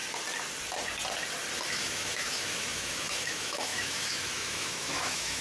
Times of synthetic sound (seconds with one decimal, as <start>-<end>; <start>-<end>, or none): 1.7-5.4